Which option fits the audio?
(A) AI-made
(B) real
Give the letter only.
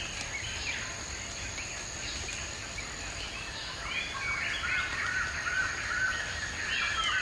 B